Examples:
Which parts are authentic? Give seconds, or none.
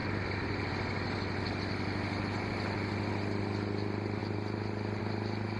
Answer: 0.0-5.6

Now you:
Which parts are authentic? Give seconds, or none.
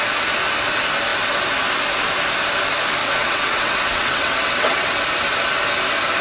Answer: 0.0-3.0; 4.9-6.2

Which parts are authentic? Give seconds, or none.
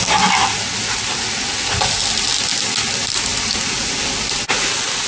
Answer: 0.0-5.1